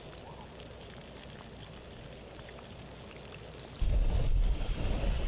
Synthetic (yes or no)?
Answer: no